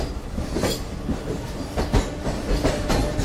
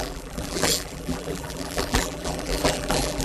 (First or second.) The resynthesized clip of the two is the second